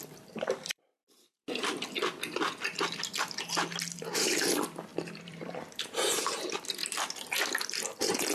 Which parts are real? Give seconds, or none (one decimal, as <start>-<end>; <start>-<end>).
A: 1.0-3.8; 6.8-7.6